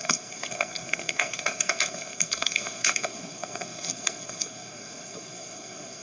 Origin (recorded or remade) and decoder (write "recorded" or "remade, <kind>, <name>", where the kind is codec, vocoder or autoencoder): remade, codec, SNAC